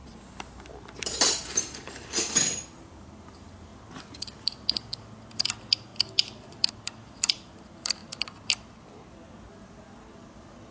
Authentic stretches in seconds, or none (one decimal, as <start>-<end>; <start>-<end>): 3.7-5.3; 8.0-9.5